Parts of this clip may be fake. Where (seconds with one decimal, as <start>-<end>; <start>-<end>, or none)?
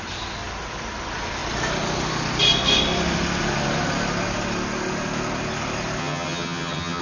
6.0-7.0